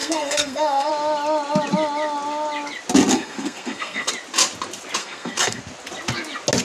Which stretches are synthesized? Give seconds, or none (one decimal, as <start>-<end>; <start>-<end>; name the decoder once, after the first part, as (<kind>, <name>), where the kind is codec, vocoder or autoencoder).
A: 0.0-0.9 (codec, SNAC); 3.1-4.1; 5.0-5.6